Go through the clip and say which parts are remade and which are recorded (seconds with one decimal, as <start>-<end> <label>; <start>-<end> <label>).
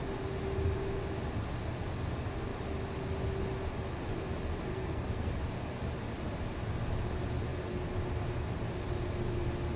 0.0-4.7 recorded; 4.7-5.3 remade; 5.3-9.8 recorded